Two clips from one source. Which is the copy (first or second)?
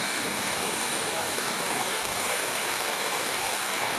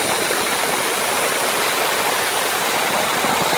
first